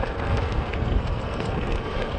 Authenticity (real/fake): fake